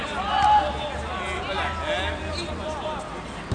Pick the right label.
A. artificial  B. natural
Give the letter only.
B